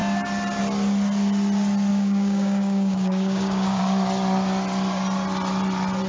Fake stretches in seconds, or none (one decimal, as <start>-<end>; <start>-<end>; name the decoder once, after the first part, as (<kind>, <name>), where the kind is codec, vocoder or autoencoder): 1.9-3.8 (codec, DAC)

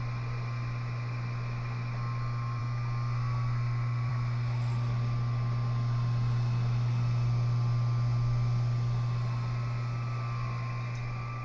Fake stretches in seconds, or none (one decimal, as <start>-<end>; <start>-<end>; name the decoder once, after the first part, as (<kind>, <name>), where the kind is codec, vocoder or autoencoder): none

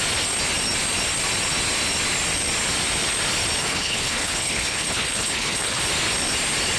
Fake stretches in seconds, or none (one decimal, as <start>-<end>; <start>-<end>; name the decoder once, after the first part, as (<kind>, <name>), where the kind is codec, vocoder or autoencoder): 3.6-5.8 (codec, HILCodec)

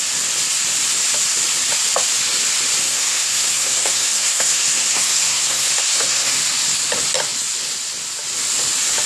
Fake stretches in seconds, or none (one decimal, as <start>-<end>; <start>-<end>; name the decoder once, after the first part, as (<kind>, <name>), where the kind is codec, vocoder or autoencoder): 2.8-6.3 (codec, SNAC)

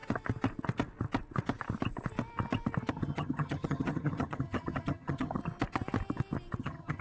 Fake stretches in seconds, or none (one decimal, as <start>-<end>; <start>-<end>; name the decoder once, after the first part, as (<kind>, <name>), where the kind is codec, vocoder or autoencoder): 2.9-5.4 (vocoder, HiFi-GAN); 6.6-7.0

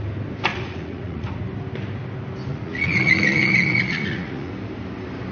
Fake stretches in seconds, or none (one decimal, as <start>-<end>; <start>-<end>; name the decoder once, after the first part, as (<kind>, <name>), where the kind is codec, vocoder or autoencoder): 0.5-1.4 (vocoder, Vocos); 2.5-4.5